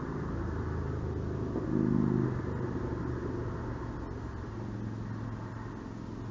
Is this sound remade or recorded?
recorded